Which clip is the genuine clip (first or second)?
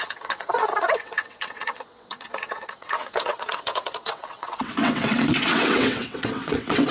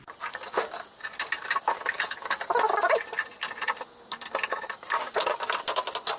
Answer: second